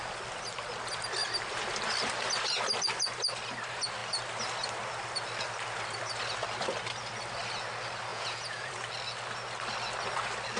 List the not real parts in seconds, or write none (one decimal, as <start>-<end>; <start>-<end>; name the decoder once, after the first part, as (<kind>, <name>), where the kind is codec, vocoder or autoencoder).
8.1-8.7 (vocoder, Vocos)